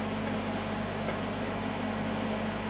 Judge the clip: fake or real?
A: real